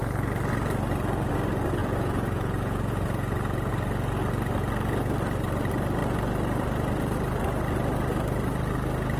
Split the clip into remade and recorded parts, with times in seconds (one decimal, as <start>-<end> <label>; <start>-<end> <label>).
0.0-1.8 recorded; 1.8-3.7 remade; 3.7-9.2 recorded